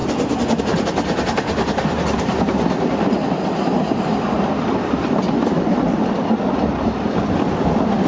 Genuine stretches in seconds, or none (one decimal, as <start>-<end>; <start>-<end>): 0.0-0.6